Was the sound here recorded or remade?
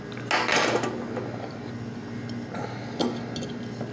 recorded